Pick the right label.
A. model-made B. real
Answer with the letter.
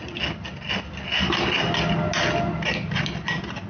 B